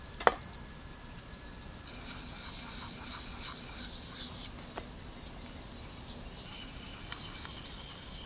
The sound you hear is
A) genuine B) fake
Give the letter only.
A